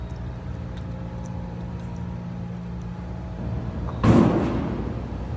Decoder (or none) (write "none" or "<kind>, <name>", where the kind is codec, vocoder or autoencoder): none